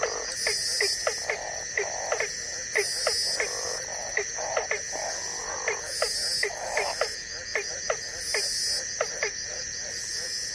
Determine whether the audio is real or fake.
real